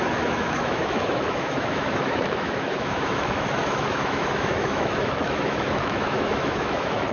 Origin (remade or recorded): remade